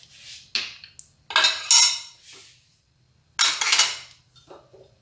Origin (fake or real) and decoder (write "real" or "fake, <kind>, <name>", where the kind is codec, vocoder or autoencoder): real